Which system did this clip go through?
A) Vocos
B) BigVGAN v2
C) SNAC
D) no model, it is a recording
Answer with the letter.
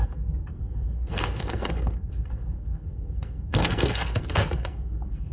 C